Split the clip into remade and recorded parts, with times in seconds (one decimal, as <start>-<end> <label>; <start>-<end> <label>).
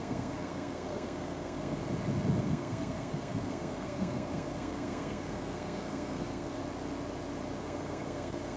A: 0.0-1.8 remade; 1.8-2.4 recorded; 2.4-6.6 remade; 6.6-7.6 recorded; 7.6-8.6 remade